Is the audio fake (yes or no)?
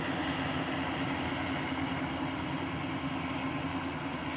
no